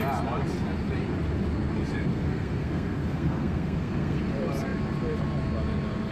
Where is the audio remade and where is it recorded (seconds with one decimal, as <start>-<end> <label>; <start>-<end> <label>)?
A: 0.0-2.1 recorded; 2.1-4.2 remade; 4.2-6.1 recorded